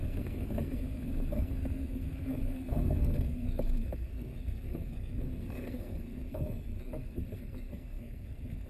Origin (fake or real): fake